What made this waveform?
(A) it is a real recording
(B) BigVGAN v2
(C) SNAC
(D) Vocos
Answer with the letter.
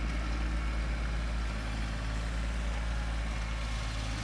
A